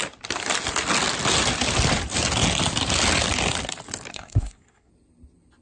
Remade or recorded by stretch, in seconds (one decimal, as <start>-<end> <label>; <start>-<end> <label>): 0.0-4.1 recorded; 4.1-4.9 remade; 4.9-5.6 recorded